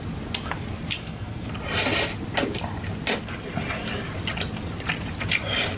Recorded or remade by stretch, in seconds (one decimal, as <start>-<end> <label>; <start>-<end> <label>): 0.0-1.0 recorded; 1.0-1.5 remade; 1.5-5.8 recorded